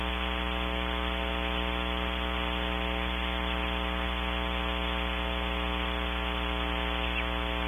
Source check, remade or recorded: recorded